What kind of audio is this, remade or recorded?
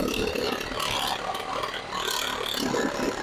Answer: recorded